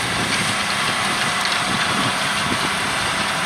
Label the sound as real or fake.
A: fake